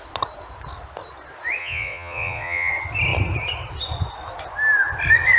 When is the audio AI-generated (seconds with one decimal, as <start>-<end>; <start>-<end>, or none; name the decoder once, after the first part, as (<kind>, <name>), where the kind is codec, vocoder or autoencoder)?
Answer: 1.6-2.7 (vocoder, Vocos)